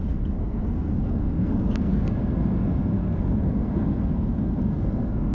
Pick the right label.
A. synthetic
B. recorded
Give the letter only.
A